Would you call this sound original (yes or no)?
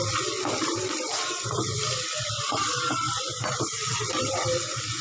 yes